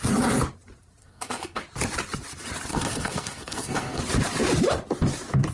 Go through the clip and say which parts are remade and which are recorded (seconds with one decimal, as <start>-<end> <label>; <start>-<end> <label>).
0.0-1.0 recorded; 1.0-1.6 remade; 1.6-2.7 recorded; 2.7-4.0 remade; 4.0-5.5 recorded